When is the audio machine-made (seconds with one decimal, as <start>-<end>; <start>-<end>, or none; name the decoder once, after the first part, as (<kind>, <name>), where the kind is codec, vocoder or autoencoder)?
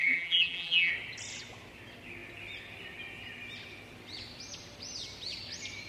0.0-0.9 (vocoder, BigVGAN v2)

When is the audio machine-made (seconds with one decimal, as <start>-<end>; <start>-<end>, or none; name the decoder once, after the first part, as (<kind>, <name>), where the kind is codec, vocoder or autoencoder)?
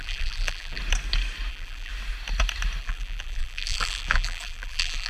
0.0-0.8 (vocoder, BigVGAN v2); 1.5-1.9; 2.8-5.1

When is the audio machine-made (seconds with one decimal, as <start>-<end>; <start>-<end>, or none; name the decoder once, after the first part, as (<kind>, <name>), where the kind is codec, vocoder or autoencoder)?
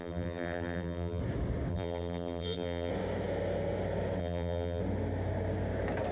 0.0-1.2 (vocoder, BigVGAN v2); 1.7-2.9; 4.2-4.8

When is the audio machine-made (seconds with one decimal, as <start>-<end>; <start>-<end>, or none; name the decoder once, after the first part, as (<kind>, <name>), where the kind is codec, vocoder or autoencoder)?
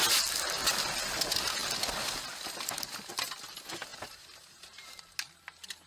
3.9-5.0 (vocoder, BigVGAN v2)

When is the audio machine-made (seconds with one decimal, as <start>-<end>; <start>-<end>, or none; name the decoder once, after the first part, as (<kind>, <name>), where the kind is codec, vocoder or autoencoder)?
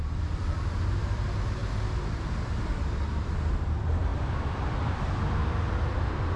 0.0-1.6 (vocoder, BigVGAN v2); 3.2-6.4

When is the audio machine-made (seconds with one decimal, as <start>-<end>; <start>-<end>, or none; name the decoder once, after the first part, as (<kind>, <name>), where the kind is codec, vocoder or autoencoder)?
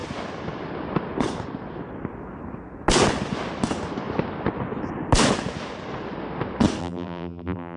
6.8-7.8 (vocoder, BigVGAN v2)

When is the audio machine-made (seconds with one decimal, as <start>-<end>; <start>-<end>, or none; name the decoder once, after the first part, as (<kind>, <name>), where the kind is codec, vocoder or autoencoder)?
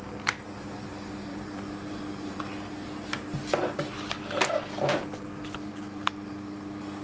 1.3-2.4 (vocoder, BigVGAN v2)